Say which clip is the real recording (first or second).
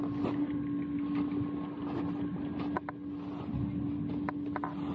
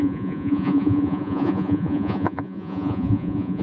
first